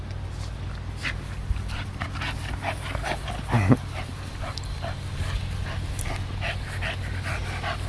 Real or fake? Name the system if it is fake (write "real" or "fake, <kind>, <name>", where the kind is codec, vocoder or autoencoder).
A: real